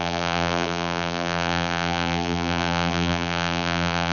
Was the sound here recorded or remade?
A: remade